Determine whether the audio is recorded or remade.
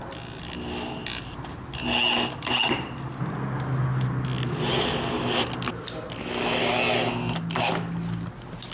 recorded